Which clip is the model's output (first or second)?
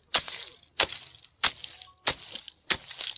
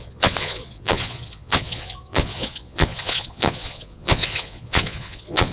second